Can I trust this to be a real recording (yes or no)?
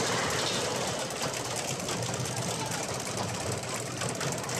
yes